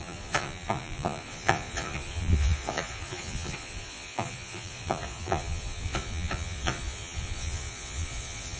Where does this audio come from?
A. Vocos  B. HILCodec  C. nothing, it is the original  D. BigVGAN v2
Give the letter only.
A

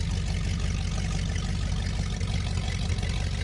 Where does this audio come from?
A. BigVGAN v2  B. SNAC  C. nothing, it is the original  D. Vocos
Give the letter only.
C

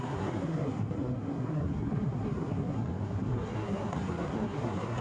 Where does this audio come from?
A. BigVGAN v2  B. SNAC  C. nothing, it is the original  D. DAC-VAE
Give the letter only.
B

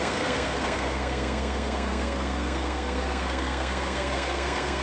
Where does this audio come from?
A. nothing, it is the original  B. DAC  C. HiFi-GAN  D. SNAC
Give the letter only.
D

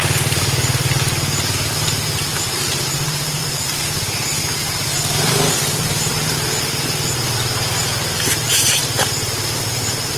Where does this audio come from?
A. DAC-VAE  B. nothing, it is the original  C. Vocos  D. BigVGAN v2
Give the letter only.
D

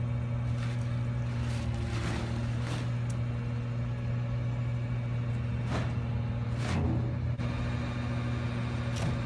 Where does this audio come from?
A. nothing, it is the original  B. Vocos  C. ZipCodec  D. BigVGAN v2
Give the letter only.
A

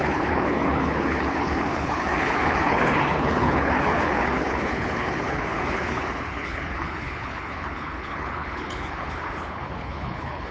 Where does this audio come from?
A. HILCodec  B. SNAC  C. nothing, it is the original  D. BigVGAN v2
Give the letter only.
A